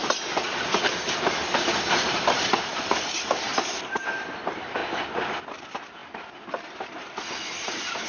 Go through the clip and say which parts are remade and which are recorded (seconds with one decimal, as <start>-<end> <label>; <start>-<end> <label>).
0.0-2.3 recorded; 2.3-4.8 remade; 4.8-5.4 recorded; 5.4-8.1 remade